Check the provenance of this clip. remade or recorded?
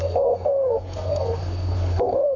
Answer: remade